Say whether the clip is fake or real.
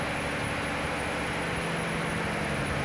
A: real